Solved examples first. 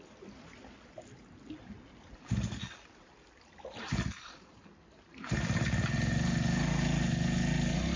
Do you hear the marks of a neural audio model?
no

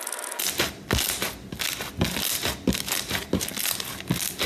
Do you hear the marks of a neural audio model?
no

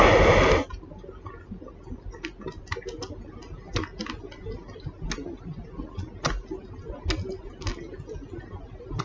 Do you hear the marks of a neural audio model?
no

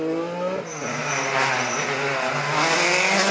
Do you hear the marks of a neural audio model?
no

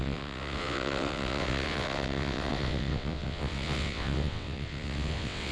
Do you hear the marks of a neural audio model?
yes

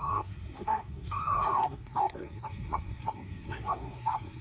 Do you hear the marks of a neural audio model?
yes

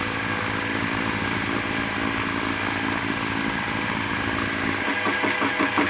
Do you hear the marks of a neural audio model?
no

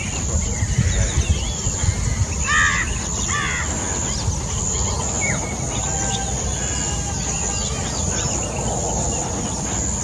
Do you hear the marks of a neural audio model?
no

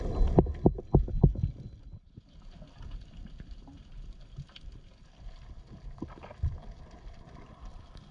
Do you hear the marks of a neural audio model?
no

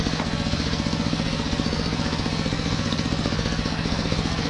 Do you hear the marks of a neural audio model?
yes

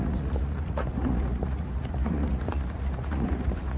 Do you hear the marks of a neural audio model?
yes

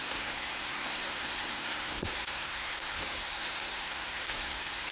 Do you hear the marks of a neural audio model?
yes